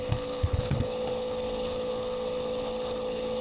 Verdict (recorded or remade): remade